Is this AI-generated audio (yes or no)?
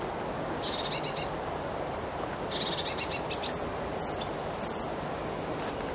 no